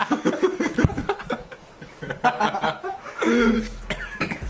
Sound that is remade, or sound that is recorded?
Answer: remade